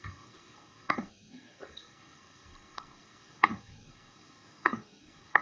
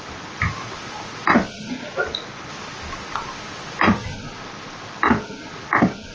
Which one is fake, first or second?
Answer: first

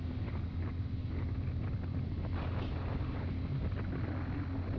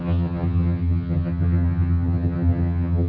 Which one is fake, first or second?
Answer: second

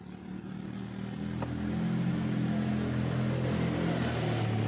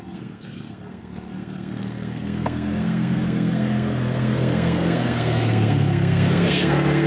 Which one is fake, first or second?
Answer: second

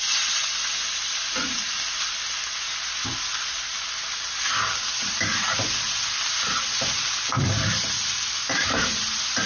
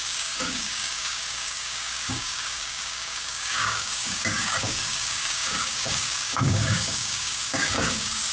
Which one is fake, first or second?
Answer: second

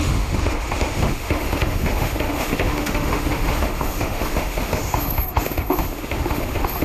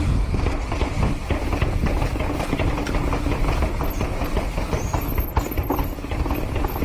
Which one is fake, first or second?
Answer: first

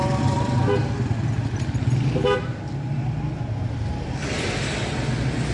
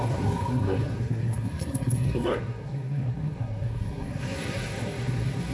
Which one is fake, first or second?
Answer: second